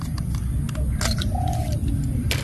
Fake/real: real